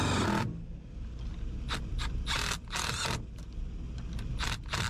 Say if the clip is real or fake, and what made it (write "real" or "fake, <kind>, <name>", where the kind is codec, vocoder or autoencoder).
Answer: real